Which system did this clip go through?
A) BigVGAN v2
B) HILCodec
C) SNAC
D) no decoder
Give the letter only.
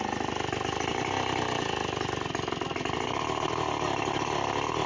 D